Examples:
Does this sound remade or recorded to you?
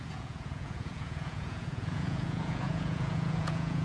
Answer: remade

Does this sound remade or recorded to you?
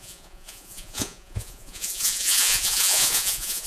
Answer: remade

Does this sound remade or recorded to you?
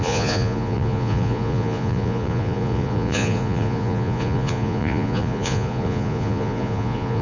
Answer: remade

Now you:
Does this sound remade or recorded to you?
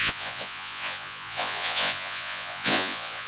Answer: remade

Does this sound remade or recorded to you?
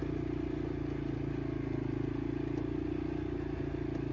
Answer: recorded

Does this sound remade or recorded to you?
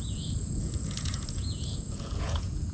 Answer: remade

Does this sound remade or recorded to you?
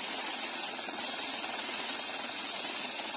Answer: remade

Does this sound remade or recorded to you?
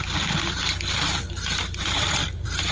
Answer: recorded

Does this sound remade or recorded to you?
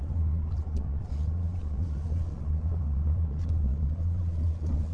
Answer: remade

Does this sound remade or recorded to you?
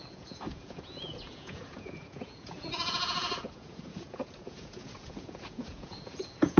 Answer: remade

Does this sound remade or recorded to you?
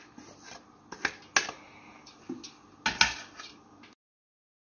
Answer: recorded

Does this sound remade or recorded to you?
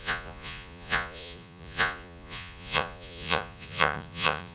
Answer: remade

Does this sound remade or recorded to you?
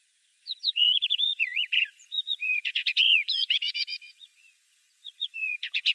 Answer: remade